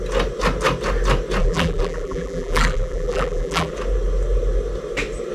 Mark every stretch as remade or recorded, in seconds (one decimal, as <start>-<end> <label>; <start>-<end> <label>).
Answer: 0.0-1.4 recorded; 1.4-3.7 remade; 3.7-5.3 recorded